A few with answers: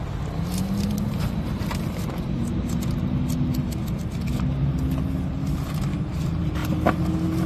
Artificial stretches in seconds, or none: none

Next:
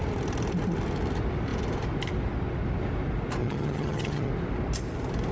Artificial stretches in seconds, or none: 3.4-4.3 (vocoder, HiFi-GAN)

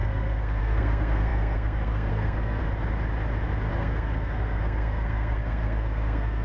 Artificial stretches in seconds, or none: 0.0-2.6 (codec, SNAC); 3.7-6.4

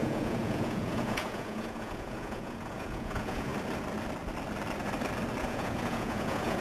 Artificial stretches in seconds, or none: 0.0-3.5 (vocoder, Vocos); 5.4-6.6

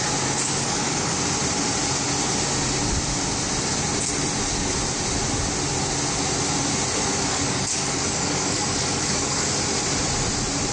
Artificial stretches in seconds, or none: 0.5-1.2 (codec, DAC); 7.0-9.5

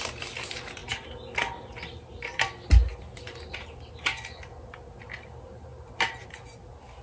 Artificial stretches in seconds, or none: none